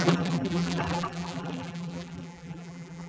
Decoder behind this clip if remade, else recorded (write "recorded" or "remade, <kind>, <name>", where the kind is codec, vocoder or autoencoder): remade, vocoder, BigVGAN v2